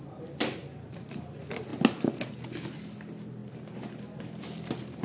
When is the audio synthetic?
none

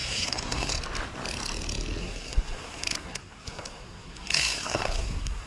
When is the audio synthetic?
0.0-0.7 (codec, SNAC); 2.0-5.5

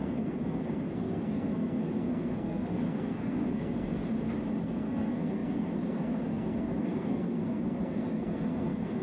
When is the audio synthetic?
0.0-4.0 (codec, SNAC); 4.6-9.0

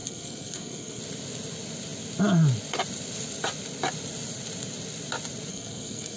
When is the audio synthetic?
0.0-1.0 (codec, SNAC); 5.5-6.2

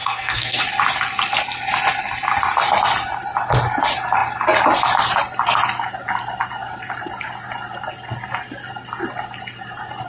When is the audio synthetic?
0.0-0.6 (codec, SNAC)

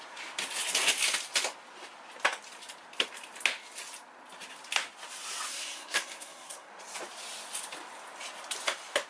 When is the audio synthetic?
5.5-6.7 (codec, SNAC)

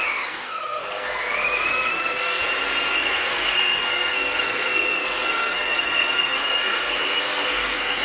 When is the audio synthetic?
0.0-2.4 (codec, SNAC); 2.9-8.0

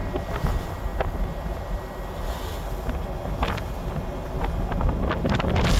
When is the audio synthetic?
none